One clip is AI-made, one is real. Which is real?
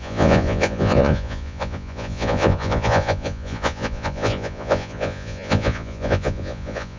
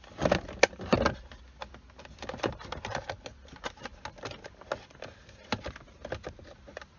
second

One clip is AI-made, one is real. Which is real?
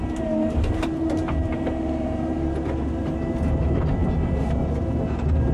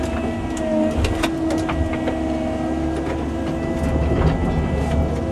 second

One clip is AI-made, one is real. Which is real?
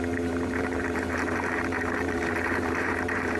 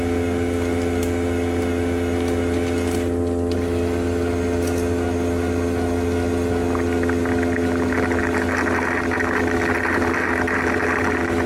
second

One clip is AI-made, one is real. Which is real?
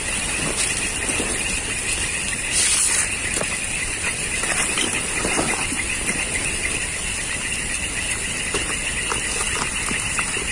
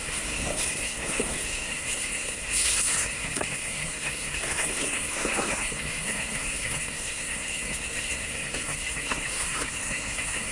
first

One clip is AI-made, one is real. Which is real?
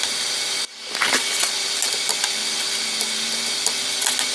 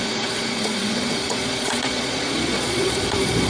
first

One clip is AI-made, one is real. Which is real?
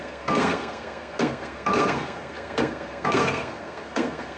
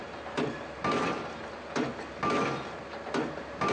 second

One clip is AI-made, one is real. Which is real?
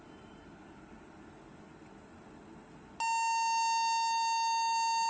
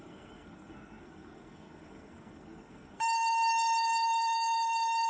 first